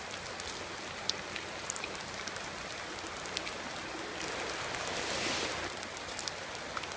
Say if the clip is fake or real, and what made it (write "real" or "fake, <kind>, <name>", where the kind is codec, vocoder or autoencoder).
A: real